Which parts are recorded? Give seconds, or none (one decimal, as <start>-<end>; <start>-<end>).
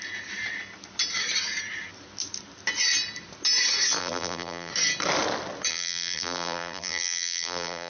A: 0.0-4.0; 4.7-5.7